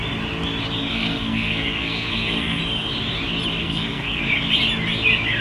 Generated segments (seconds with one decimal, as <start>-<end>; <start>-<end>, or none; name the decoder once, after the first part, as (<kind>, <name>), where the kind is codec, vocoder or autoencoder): 0.9-2.6 (codec, SNAC); 3.6-4.2